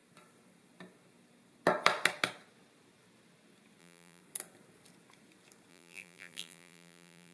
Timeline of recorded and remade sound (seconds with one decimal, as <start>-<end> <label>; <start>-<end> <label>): 0.0-3.8 recorded; 3.8-4.2 remade; 4.2-5.7 recorded; 5.7-7.3 remade